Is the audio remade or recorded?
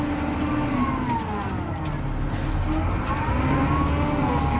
recorded